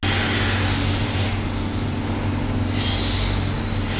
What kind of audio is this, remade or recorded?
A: recorded